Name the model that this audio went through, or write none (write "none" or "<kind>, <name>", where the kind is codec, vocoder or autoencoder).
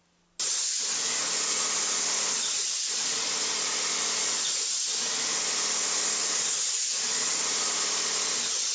none